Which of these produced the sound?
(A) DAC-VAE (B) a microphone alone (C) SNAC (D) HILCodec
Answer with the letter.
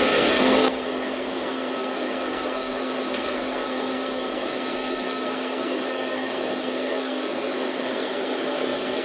C